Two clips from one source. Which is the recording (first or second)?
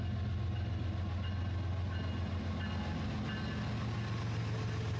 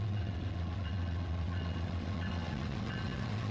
first